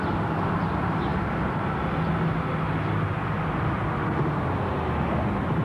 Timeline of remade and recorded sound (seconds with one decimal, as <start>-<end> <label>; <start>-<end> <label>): 0.0-5.6 recorded